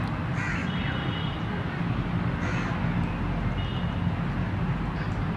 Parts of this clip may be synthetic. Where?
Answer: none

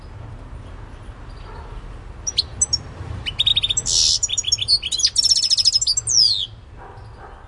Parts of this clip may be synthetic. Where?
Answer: none